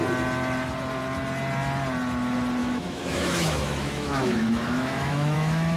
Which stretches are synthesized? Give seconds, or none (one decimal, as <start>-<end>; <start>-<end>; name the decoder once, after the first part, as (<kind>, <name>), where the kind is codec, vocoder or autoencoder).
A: 2.6-5.8 (autoencoder, DAC-VAE)